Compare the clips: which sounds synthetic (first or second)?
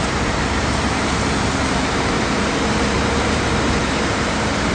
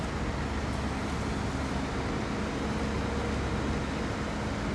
first